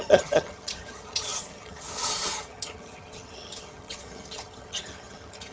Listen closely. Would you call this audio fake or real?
fake